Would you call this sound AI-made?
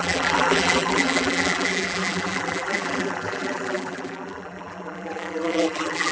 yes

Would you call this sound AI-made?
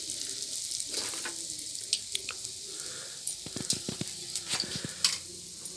no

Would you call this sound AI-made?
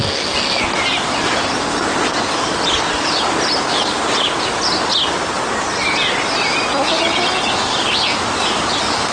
no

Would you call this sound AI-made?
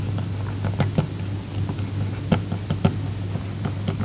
no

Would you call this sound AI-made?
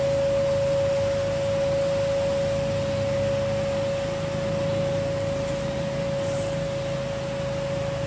no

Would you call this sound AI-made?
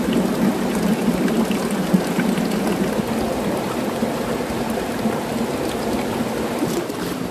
no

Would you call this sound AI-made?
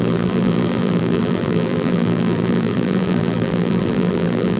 yes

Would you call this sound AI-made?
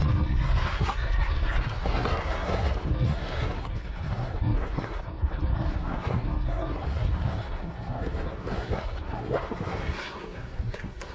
yes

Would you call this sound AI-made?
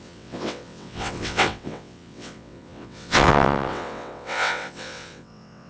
yes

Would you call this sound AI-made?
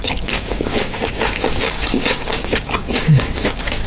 yes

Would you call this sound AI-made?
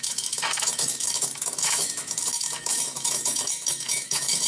yes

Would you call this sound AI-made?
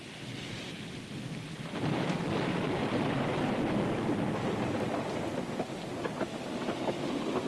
no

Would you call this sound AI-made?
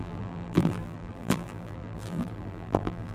yes